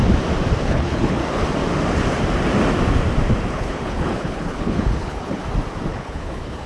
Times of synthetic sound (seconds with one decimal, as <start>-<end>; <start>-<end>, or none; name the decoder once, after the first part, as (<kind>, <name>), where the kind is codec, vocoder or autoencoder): 0.6-1.2 (codec, HILCodec); 3.5-5.4; 5.9-6.7